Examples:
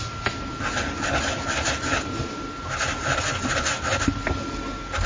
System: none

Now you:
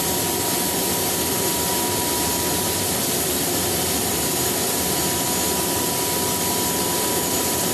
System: none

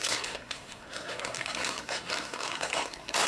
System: codec, SNAC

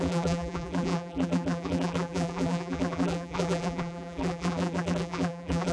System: vocoder, BigVGAN v2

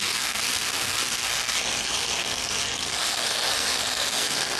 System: codec, SNAC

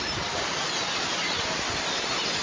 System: none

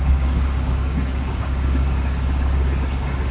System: codec, DAC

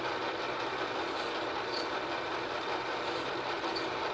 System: vocoder, BigVGAN v2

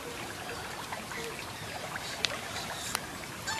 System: vocoder, BigVGAN v2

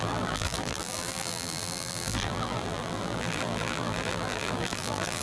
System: vocoder, BigVGAN v2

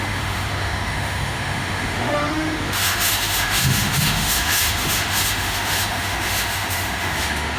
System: autoencoder, DAC-VAE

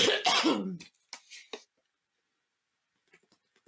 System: none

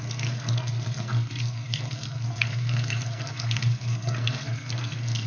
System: codec, SNAC